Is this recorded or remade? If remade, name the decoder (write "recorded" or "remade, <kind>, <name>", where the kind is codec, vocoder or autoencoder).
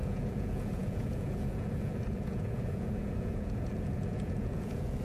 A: remade, vocoder, Vocos